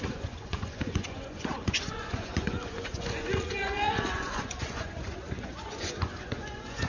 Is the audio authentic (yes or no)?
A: no